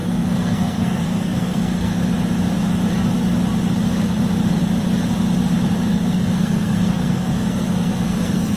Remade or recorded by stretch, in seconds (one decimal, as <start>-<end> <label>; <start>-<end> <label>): 0.0-2.0 remade; 2.0-5.9 recorded; 5.9-8.6 remade